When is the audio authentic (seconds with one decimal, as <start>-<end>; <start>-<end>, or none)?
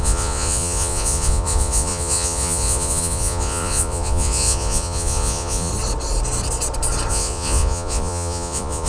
5.7-7.1